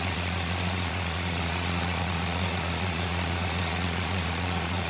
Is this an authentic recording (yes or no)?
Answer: no